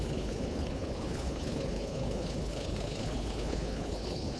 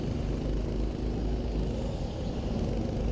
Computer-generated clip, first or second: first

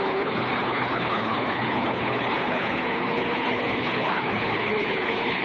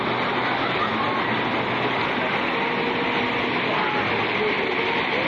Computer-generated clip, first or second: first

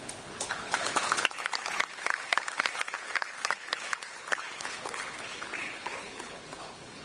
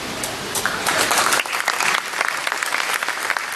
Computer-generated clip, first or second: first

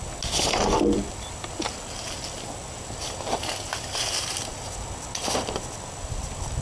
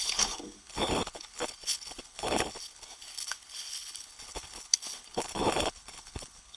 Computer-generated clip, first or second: second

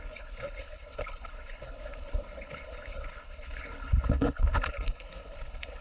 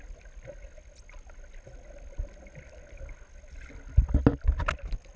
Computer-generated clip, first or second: first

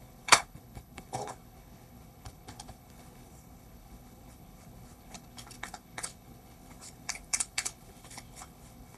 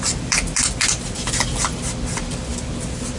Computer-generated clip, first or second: first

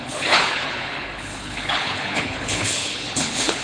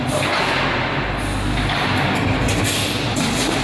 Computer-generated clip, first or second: first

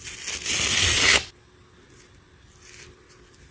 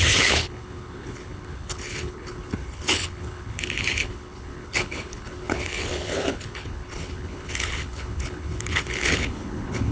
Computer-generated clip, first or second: second